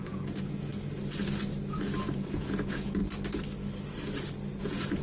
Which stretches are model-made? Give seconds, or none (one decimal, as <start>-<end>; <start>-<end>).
0.0-0.7; 1.8-3.0; 4.6-5.0